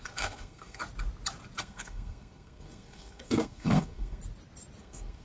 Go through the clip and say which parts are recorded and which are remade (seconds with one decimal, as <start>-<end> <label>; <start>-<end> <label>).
0.0-0.8 remade; 0.8-1.6 recorded; 1.6-4.2 remade; 4.2-4.8 recorded; 4.8-5.2 remade